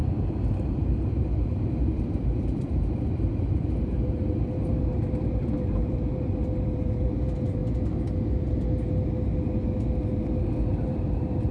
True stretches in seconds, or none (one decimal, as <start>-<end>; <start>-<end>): 7.6-10.7